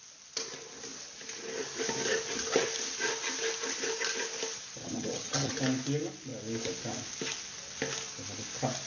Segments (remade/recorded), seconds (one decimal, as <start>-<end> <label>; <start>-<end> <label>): 0.0-4.8 recorded; 4.8-5.5 remade; 5.5-8.9 recorded

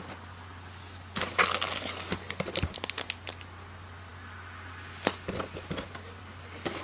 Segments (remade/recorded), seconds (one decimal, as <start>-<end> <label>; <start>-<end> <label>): 0.0-6.8 recorded

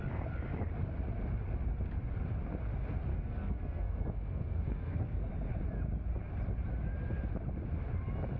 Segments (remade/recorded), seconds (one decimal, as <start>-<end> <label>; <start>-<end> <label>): 0.0-3.1 recorded; 3.1-5.3 remade; 5.3-8.4 recorded

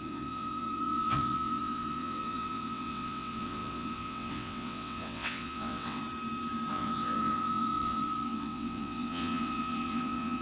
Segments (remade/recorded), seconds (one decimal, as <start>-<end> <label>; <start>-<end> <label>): 0.0-6.0 remade; 6.0-6.7 recorded; 6.7-10.4 remade